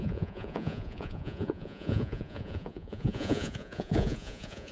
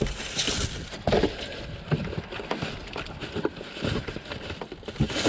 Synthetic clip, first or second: first